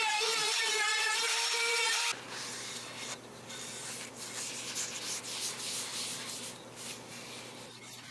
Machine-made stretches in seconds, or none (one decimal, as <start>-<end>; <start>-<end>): none